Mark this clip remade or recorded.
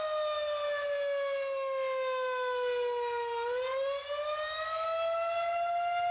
recorded